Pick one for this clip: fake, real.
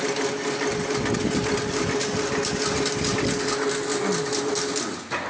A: real